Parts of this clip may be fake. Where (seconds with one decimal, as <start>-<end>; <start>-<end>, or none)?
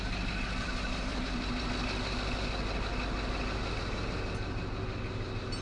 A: 0.6-1.7